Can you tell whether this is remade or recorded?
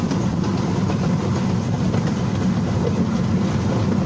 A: recorded